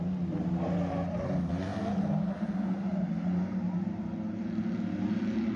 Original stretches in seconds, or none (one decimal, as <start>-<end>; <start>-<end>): 0.0-5.6